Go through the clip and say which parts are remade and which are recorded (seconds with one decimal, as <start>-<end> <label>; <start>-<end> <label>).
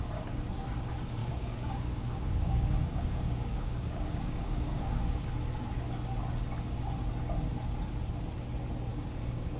0.0-1.2 recorded; 1.2-5.2 remade; 5.2-8.9 recorded; 8.9-9.6 remade